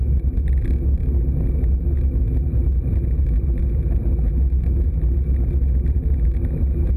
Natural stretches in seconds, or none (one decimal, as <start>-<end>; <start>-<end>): 0.0-7.0

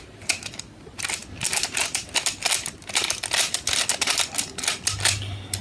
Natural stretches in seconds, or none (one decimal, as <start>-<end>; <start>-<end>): 0.0-5.6